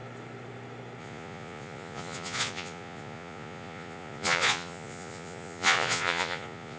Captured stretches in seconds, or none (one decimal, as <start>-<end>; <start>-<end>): 0.0-1.0